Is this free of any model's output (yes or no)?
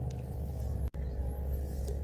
yes